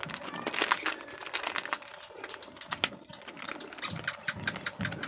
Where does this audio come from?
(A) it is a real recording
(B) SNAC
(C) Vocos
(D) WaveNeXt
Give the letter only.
A